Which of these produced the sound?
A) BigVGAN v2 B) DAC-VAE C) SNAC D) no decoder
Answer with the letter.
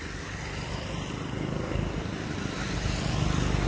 D